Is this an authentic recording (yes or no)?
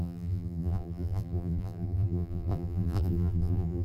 no